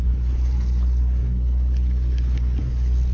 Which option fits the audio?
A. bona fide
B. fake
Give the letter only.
A